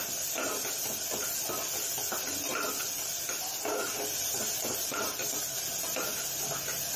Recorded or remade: recorded